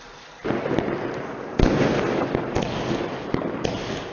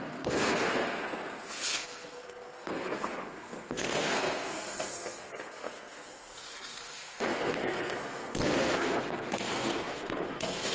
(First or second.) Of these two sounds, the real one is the first